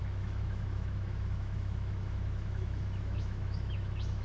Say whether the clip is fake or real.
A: fake